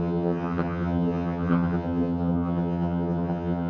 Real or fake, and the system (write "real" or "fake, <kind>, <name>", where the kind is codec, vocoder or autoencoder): fake, vocoder, HiFi-GAN